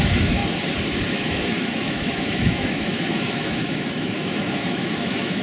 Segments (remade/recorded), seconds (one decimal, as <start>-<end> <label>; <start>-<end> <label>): 0.0-0.4 remade; 0.4-1.1 recorded; 1.1-5.4 remade